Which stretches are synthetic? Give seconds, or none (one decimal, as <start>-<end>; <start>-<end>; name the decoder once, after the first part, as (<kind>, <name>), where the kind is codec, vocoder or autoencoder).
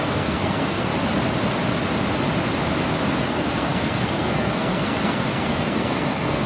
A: 0.0-0.9 (codec, SNAC); 3.3-6.5